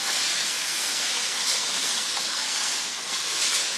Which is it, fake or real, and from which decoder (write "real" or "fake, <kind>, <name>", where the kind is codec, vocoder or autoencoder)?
fake, codec, SNAC